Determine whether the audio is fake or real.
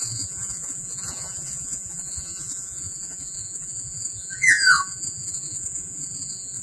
fake